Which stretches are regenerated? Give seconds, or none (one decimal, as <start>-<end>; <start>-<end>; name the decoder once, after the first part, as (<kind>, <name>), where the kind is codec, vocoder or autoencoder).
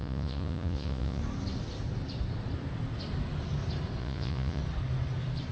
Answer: 0.0-1.2 (vocoder, Vocos); 4.0-4.6